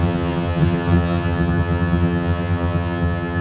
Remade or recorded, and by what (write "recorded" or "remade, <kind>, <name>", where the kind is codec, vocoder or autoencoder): remade, vocoder, HiFi-GAN